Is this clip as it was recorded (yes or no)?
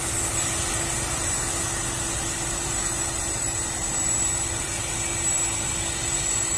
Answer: yes